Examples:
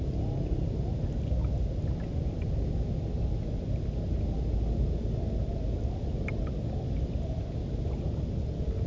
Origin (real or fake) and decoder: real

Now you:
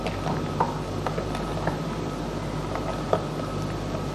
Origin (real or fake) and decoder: real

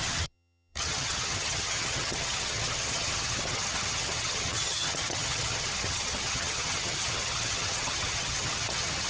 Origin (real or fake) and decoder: fake, vocoder, HiFi-GAN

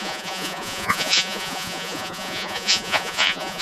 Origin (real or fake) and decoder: fake, vocoder, Vocos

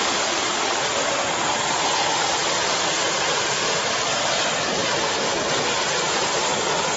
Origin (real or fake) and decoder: fake, vocoder, BigVGAN v2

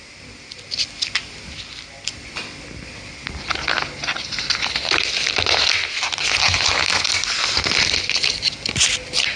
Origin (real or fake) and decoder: real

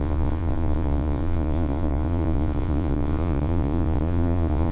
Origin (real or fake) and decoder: fake, vocoder, Vocos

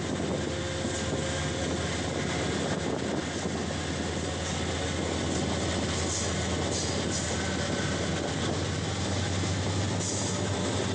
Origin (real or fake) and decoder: real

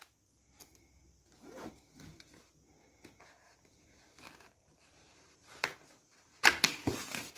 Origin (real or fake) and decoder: real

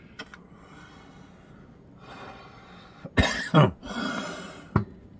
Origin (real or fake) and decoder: real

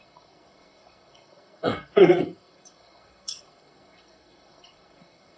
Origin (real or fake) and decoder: fake, codec, SNAC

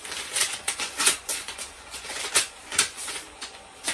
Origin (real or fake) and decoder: fake, vocoder, Vocos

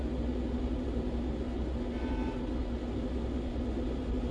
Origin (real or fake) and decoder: real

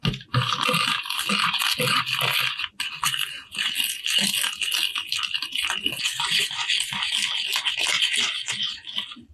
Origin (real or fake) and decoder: real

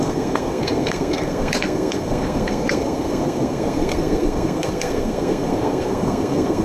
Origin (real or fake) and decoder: fake, codec, SNAC